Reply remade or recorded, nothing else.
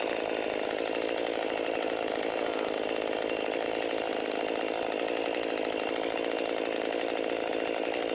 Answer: recorded